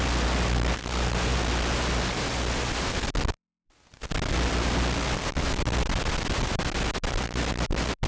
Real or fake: real